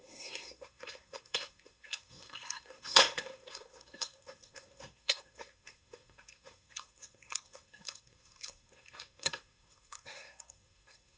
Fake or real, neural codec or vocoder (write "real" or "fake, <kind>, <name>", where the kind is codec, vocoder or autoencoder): fake, codec, SNAC